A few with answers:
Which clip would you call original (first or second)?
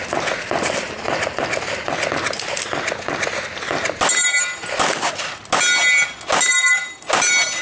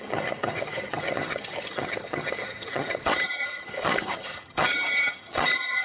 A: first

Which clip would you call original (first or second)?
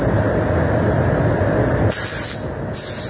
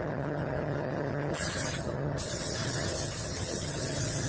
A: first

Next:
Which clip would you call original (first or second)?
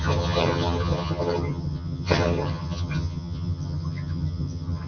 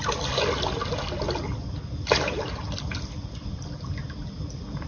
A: second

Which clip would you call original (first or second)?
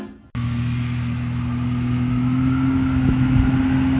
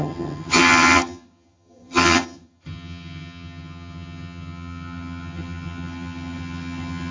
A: first